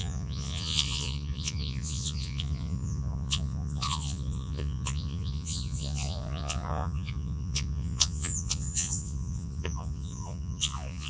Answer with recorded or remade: remade